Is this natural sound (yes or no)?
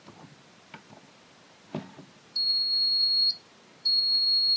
no